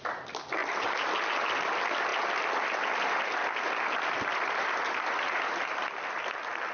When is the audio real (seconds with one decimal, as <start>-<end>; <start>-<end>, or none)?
0.0-6.7